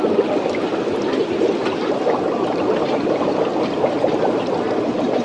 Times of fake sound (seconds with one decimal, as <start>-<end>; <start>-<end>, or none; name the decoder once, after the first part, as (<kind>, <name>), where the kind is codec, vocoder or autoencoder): none